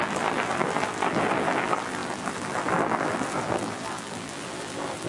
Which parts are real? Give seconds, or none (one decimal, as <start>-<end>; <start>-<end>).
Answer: none

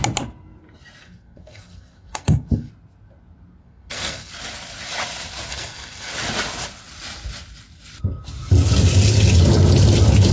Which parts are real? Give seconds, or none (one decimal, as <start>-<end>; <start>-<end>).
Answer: 0.0-1.0; 2.7-3.6; 4.3-5.5; 6.1-10.3

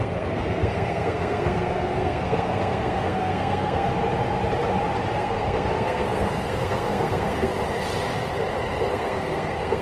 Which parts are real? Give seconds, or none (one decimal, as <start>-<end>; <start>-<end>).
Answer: 3.9-5.1; 7.5-8.9

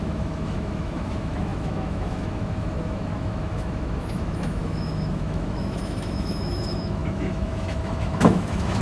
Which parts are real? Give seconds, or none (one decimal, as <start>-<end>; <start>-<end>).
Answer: none

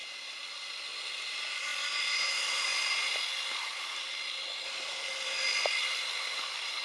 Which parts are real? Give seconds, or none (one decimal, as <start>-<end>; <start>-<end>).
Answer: 0.5-6.8